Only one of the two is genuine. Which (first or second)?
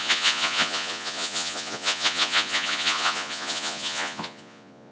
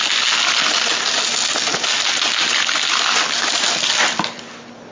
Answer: second